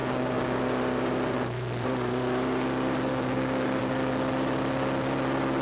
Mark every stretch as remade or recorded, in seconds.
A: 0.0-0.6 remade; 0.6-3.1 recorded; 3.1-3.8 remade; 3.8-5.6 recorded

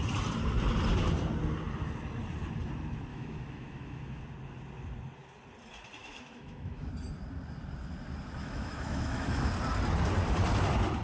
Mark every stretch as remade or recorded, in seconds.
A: 0.0-3.1 recorded; 3.1-4.2 remade; 4.2-6.0 recorded; 6.0-6.9 remade; 6.9-8.4 recorded; 8.4-9.5 remade; 9.5-11.0 recorded

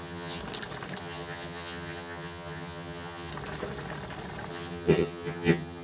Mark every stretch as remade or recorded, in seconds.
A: 0.0-0.4 remade; 0.4-1.0 recorded; 1.0-3.3 remade; 3.3-4.5 recorded; 4.5-5.8 remade

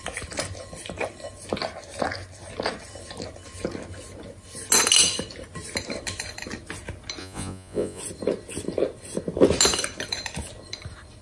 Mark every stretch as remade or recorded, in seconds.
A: 0.0-7.2 recorded; 7.2-8.0 remade; 8.0-11.2 recorded

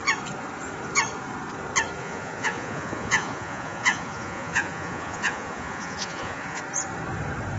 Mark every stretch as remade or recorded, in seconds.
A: 0.0-2.0 recorded; 2.0-6.6 remade; 6.6-7.6 recorded

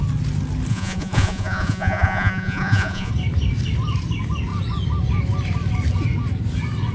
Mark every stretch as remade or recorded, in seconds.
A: 0.0-0.7 recorded; 0.7-3.1 remade; 3.1-6.9 recorded